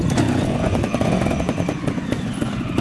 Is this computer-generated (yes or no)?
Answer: yes